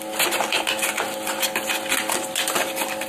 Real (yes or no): yes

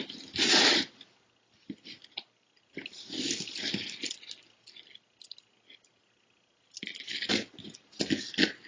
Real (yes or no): yes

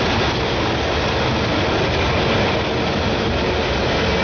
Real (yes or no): yes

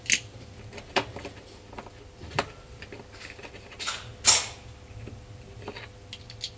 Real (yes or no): yes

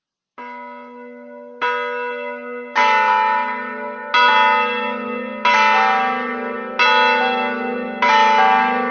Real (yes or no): yes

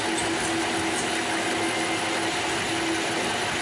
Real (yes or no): yes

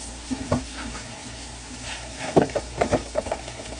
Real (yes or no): no